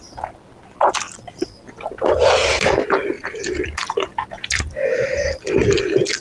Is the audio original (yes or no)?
yes